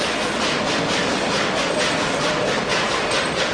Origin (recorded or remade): recorded